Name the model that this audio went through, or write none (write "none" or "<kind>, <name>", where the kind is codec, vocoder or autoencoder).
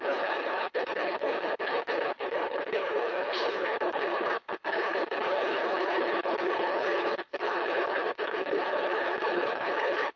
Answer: codec, HILCodec